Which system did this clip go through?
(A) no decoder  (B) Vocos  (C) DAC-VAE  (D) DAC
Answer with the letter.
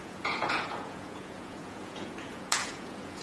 B